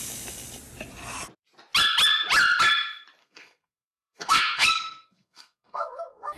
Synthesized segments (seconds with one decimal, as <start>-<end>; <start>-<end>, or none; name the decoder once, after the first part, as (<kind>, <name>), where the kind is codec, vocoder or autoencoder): 3.2-6.4 (codec, SNAC)